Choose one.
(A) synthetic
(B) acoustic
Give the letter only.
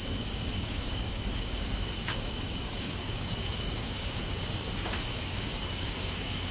A